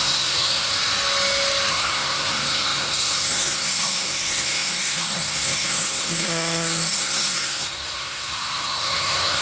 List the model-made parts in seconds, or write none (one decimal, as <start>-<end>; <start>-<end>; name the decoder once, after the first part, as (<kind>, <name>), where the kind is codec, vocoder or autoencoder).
0.0-0.7 (codec, SNAC); 1.7-9.4